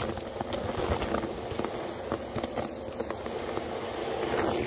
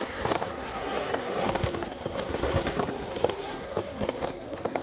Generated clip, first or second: second